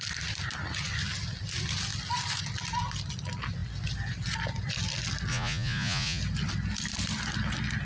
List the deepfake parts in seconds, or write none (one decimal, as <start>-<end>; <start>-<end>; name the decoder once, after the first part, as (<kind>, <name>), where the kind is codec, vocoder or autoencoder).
5.3-6.2 (vocoder, Vocos)